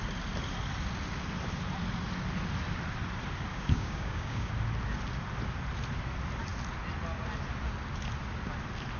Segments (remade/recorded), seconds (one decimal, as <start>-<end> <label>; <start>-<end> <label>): 0.0-3.5 recorded; 3.5-4.5 remade; 4.5-9.0 recorded